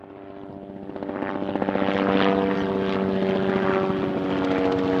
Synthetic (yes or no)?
no